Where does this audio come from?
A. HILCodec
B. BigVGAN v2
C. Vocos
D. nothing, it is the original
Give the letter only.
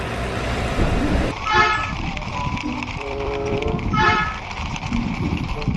B